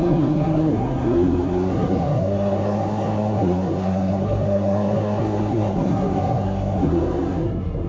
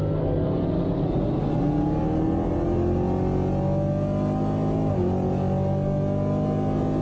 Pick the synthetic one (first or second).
first